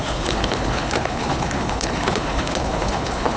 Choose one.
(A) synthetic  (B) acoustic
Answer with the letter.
A